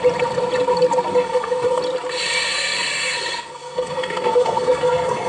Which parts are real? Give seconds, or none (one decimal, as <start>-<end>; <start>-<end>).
0.0-1.1; 1.8-2.5